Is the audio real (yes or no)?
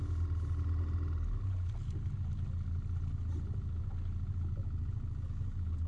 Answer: yes